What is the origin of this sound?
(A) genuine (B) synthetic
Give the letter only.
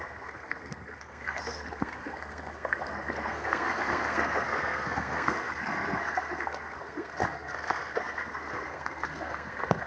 B